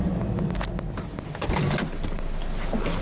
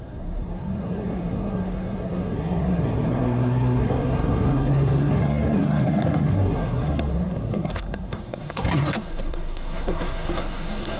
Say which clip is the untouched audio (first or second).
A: first